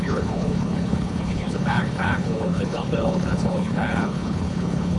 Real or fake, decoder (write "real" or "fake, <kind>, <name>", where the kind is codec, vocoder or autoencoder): fake, codec, HILCodec